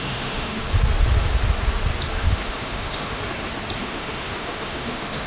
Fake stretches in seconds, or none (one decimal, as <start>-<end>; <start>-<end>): 0.0-0.6; 2.2-3.2; 3.8-5.3